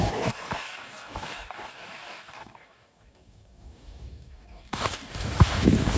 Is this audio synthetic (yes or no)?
yes